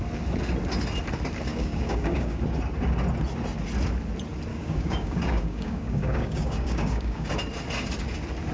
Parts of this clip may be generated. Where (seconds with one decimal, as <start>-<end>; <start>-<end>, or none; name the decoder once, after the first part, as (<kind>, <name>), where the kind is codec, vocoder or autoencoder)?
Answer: 1.5-2.4 (codec, DAC); 4.5-7.3